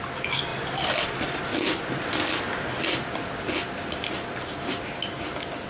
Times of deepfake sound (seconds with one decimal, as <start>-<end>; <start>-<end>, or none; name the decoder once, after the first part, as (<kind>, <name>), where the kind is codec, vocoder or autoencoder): none